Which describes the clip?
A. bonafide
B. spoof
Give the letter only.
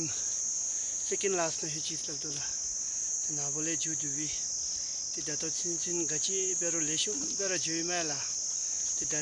A